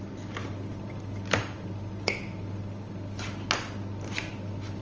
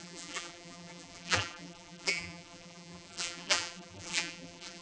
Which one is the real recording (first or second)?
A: first